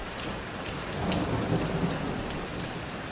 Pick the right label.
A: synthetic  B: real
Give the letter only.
B